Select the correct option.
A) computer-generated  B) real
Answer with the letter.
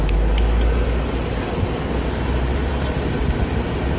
B